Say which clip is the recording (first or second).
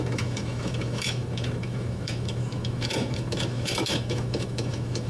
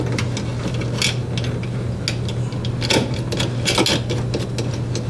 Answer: second